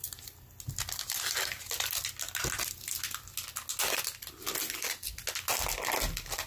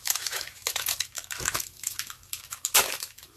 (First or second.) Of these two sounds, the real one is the first